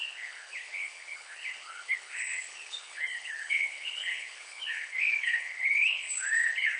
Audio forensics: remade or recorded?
remade